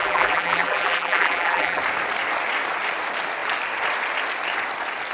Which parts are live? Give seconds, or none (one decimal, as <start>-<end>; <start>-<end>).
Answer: 1.8-5.1